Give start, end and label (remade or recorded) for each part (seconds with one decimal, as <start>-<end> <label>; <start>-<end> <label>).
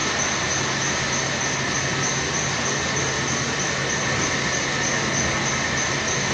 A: 0.0-6.3 recorded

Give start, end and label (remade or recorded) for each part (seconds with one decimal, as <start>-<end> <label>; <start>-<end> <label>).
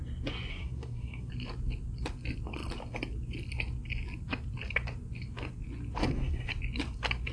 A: 0.0-0.5 recorded; 0.5-1.3 remade; 1.3-6.0 recorded; 6.0-6.5 remade; 6.5-7.3 recorded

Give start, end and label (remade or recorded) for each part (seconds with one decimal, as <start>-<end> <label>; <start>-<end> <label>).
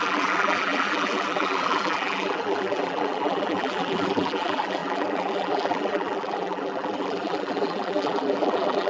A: 0.0-8.9 remade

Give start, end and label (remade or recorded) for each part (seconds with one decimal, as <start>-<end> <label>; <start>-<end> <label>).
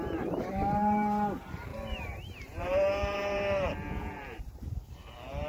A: 0.0-5.5 remade